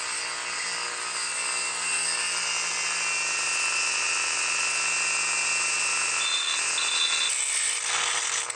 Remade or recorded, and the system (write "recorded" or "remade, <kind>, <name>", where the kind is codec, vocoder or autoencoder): recorded